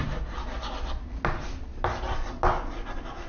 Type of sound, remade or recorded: recorded